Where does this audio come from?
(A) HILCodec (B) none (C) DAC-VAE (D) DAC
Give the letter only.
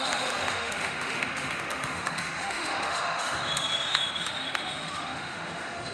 C